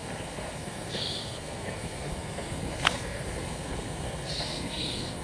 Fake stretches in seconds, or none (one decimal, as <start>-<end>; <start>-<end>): 0.0-5.2